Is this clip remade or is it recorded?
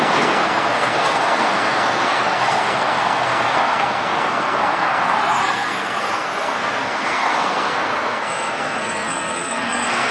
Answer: remade